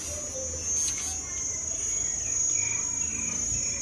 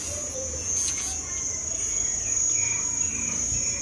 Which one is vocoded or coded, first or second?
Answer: second